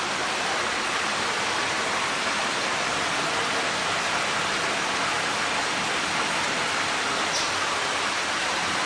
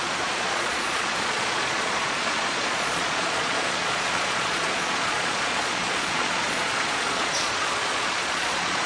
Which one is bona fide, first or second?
first